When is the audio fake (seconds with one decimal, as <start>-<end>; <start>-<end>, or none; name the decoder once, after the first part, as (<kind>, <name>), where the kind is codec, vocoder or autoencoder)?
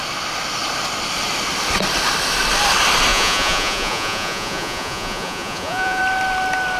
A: 3.1-6.0 (vocoder, Vocos)